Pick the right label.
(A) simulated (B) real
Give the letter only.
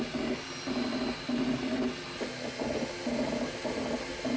B